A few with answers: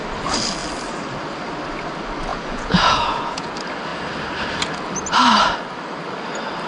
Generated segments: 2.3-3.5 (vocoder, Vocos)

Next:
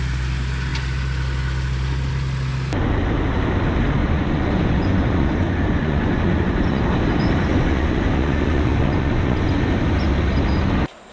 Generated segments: 4.0-6.8 (vocoder, Vocos); 7.5-9.6

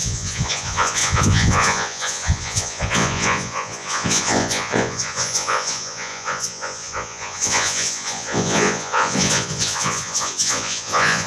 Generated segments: 0.0-11.3 (vocoder, Vocos)